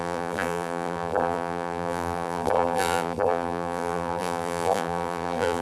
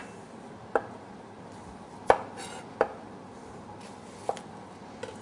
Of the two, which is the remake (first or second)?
first